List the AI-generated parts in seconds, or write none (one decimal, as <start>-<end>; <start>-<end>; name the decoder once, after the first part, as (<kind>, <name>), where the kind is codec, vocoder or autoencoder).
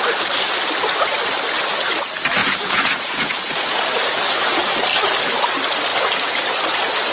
2.4-3.8 (vocoder, Vocos)